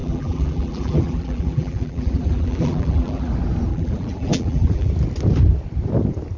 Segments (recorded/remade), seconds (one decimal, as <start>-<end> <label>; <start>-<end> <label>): 0.0-3.3 remade; 3.3-3.7 recorded; 3.7-4.9 remade; 4.9-6.4 recorded